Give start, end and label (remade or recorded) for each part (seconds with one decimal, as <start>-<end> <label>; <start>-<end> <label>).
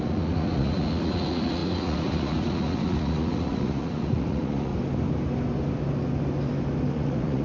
0.0-4.7 remade; 4.7-6.9 recorded; 6.9-7.4 remade